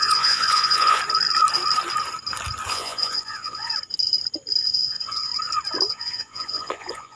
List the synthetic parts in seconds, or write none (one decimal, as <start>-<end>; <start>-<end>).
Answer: 0.0-1.0; 2.7-3.7; 4.6-5.3; 5.9-7.2